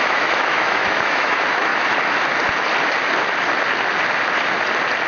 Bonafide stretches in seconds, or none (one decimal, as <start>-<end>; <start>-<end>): 1.7-5.1

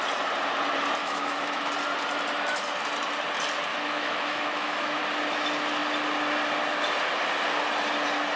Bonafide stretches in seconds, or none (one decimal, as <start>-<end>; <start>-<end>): 0.0-1.0; 1.7-3.7; 5.0-8.4

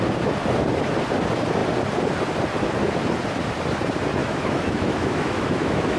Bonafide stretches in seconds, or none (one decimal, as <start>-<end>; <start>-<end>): 0.0-4.2